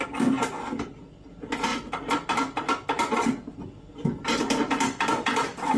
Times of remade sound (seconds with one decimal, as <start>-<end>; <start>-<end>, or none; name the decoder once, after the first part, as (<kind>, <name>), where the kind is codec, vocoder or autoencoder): none